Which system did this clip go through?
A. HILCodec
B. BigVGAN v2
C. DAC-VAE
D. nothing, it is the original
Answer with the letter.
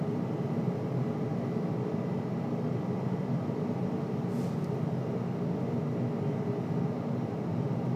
D